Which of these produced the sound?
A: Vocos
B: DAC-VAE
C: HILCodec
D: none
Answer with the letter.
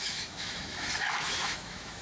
B